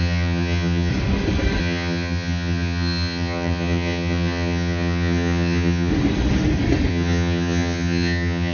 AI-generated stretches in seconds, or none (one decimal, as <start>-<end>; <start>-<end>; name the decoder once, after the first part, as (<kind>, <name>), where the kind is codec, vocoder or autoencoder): 0.0-0.9 (vocoder, HiFi-GAN); 1.6-5.9; 6.9-8.5